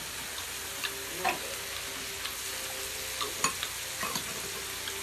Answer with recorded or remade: recorded